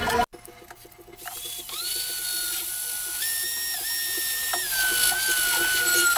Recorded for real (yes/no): yes